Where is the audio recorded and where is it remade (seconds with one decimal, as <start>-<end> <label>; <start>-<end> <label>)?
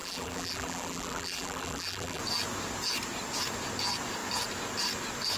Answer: 0.0-2.2 remade; 2.2-5.4 recorded